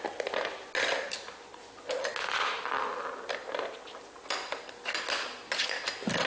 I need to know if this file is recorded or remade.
recorded